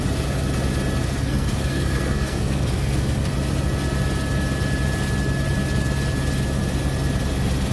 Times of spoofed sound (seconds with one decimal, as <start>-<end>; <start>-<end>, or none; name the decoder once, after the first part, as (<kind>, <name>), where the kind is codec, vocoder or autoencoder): 1.0-3.3 (codec, SNAC)